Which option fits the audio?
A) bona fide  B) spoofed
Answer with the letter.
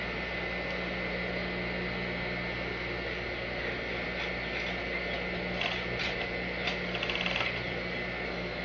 A